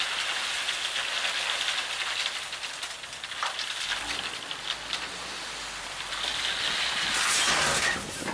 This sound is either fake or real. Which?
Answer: real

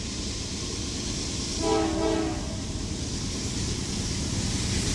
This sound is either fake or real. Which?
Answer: real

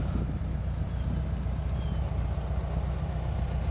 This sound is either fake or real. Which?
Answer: real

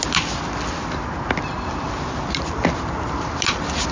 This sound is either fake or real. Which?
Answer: real